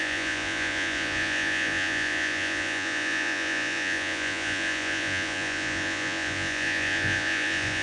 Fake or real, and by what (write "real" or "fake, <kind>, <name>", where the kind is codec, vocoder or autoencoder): fake, vocoder, Vocos